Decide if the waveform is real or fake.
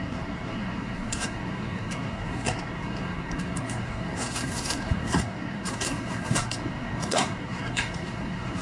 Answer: fake